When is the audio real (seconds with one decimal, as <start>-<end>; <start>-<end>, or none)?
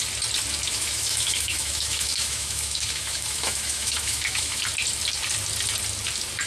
0.0-0.7; 4.6-6.5